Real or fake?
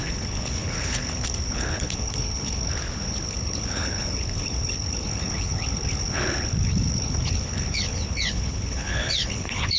fake